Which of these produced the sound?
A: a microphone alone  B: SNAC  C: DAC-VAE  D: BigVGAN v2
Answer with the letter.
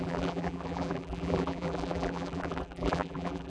D